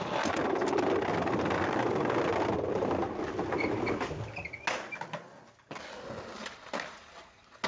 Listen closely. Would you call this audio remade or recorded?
recorded